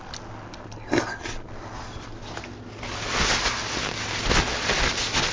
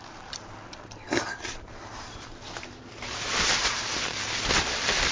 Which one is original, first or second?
first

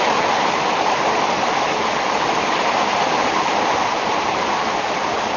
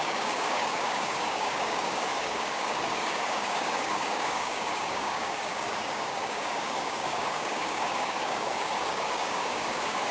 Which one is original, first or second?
first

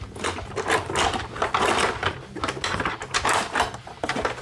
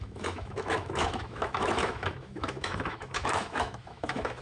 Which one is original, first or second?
first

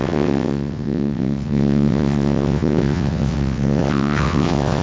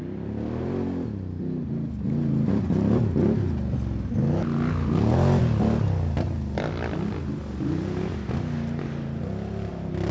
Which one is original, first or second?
second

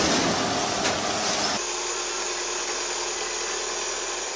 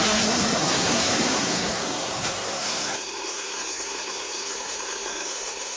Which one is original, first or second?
first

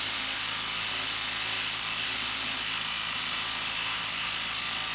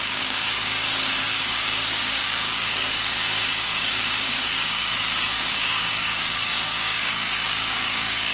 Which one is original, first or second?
first